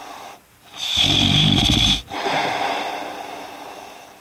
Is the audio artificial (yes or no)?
yes